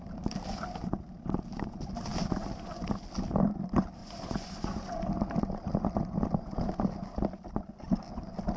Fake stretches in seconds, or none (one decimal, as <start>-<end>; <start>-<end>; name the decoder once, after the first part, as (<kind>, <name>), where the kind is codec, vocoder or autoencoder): 4.0-5.0 (vocoder, Vocos)